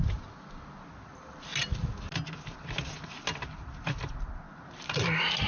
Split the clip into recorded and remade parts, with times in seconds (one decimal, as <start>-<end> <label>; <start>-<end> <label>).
0.0-5.5 recorded